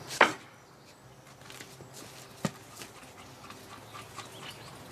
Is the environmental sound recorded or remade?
recorded